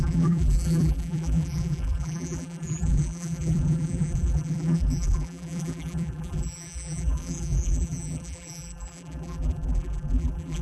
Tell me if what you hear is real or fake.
fake